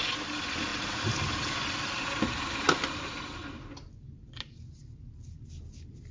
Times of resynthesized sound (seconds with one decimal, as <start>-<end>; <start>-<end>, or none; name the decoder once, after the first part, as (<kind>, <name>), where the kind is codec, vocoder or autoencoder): none